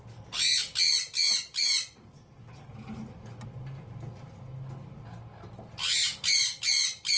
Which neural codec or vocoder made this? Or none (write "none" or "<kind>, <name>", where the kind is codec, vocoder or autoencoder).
none